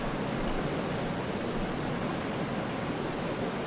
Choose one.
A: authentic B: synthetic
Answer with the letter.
A